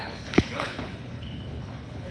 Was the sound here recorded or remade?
remade